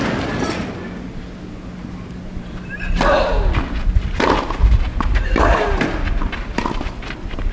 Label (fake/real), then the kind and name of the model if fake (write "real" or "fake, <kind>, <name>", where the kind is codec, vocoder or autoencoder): real